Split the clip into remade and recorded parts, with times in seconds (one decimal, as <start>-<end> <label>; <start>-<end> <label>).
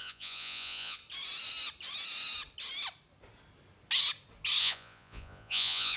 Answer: 0.0-1.0 remade; 1.0-4.6 recorded; 4.6-6.0 remade